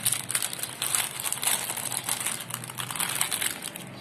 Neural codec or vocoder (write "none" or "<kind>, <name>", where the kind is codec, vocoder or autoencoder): none